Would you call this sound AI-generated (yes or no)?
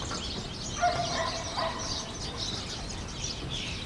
no